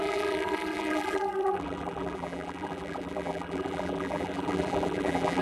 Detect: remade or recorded remade